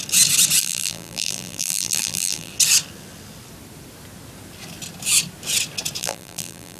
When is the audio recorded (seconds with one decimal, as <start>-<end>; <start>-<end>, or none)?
0.0-0.6; 2.5-6.0